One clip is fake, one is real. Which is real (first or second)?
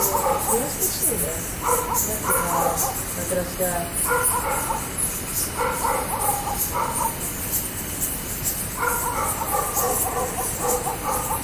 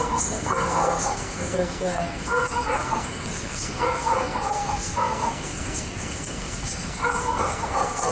first